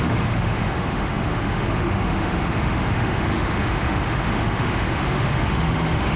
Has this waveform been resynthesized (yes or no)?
yes